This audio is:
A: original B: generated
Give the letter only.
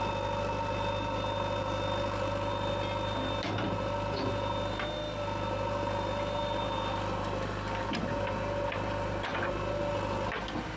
A